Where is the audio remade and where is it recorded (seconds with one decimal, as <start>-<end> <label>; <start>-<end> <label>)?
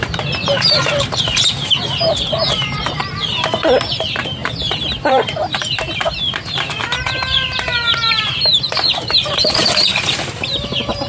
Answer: 0.0-3.0 remade; 3.0-3.9 recorded; 3.9-11.1 remade